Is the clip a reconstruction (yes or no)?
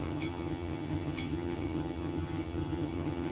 yes